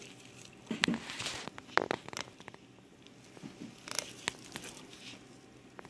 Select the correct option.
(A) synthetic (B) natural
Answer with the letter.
B